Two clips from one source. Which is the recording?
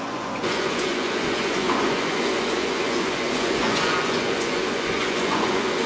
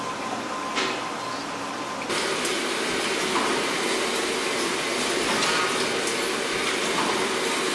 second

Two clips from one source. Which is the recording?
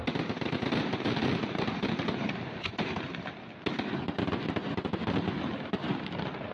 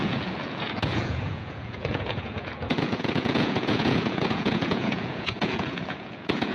first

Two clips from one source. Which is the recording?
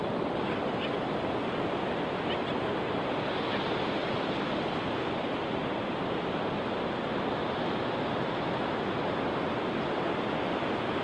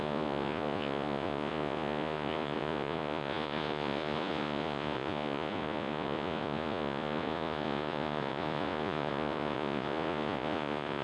first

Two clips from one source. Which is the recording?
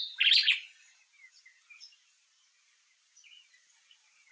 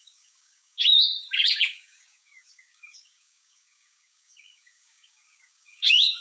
first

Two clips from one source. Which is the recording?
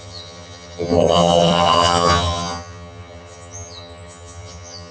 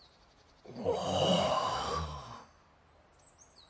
second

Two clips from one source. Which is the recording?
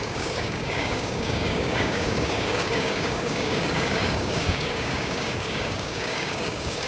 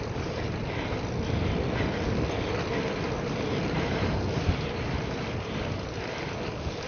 second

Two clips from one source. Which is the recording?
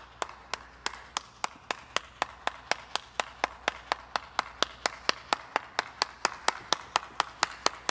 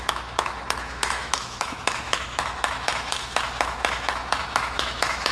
first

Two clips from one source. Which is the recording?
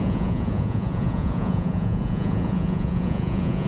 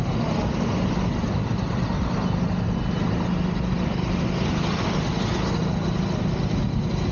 second